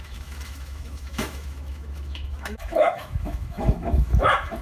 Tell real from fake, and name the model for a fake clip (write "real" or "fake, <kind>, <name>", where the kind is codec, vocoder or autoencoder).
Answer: fake, autoencoder, DAC-VAE